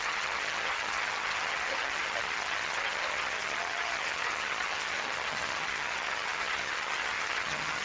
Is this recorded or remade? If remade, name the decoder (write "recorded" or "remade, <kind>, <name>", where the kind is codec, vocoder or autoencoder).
remade, vocoder, HiFi-GAN